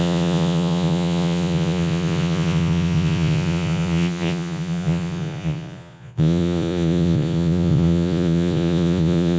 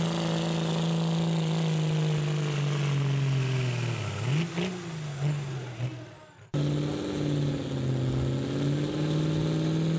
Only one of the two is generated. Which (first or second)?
first